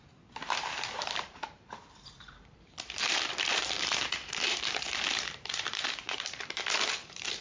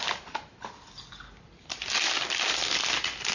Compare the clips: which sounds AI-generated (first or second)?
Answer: first